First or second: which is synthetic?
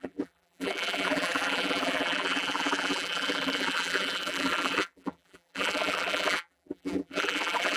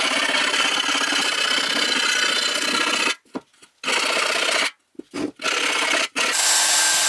first